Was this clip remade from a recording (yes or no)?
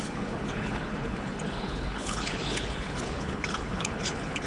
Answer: yes